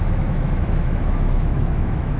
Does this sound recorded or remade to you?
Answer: remade